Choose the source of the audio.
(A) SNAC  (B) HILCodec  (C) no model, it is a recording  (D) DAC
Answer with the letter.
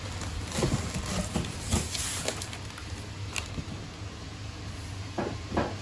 C